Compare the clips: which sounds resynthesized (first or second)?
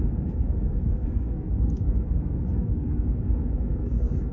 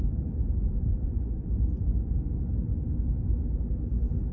first